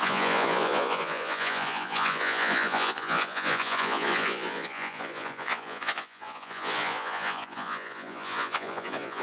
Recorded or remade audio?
remade